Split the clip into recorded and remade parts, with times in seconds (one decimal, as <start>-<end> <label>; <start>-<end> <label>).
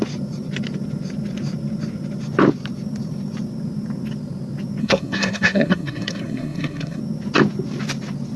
0.0-4.8 recorded; 4.8-7.0 remade; 7.0-8.4 recorded